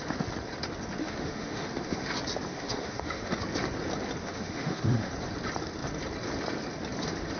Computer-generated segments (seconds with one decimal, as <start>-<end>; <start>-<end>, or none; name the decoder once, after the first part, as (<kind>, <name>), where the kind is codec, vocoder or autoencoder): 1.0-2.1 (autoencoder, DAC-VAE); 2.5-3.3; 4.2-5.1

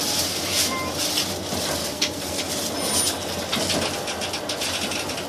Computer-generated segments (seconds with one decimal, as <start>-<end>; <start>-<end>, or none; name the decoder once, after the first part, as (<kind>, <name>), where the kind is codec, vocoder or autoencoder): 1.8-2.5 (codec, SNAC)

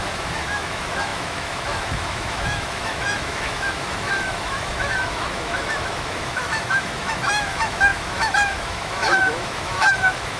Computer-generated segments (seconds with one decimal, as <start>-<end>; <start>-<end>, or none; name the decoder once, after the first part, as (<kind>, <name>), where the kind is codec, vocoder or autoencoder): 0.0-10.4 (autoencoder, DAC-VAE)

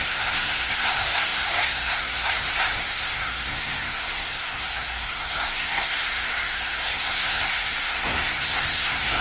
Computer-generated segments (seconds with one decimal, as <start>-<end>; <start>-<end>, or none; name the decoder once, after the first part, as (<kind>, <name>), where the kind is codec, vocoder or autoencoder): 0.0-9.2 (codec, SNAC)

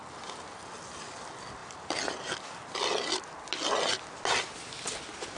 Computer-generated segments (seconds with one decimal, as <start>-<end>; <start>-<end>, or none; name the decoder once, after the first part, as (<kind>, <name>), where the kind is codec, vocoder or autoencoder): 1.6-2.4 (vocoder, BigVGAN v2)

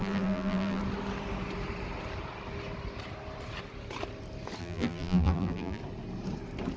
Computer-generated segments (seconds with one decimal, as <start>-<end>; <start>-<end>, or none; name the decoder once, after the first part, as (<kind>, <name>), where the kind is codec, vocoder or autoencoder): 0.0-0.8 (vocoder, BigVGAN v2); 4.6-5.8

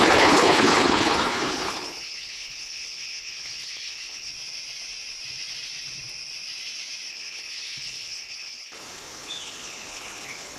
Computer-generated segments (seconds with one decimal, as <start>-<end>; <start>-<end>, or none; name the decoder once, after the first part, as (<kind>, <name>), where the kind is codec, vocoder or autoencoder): 0.0-4.3 (codec, HILCodec); 7.1-10.6